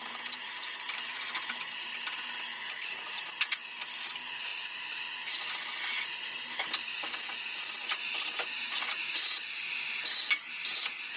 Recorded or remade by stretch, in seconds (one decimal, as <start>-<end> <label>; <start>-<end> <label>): 0.0-2.6 recorded; 2.6-3.2 remade; 3.2-4.5 recorded; 4.5-5.2 remade; 5.2-11.2 recorded